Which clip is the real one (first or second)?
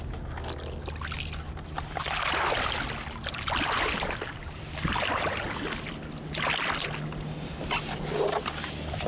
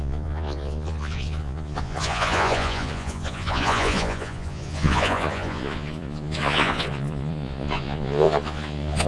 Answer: first